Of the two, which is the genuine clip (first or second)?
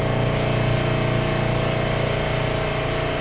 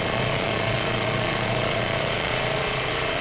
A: first